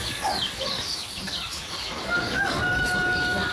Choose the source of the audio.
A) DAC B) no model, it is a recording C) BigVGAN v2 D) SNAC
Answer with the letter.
A